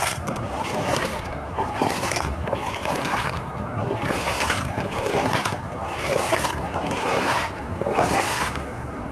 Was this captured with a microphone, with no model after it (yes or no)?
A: no